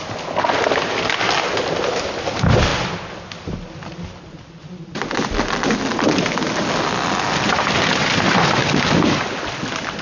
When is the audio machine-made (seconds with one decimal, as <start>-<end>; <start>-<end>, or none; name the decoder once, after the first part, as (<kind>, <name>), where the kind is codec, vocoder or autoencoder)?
none